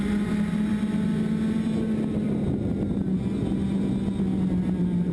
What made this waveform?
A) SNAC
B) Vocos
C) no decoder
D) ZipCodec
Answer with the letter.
C